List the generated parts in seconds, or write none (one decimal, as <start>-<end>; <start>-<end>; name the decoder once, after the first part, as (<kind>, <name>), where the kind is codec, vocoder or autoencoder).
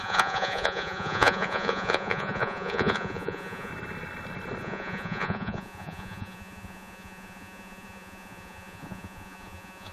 0.0-3.7 (vocoder, Vocos); 4.6-9.9